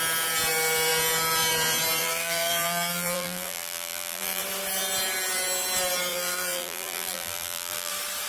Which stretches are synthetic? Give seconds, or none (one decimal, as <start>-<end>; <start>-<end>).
2.0-4.4; 6.1-7.9